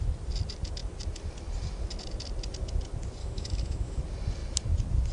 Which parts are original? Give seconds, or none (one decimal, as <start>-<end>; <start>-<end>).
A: 0.0-3.2; 4.0-5.1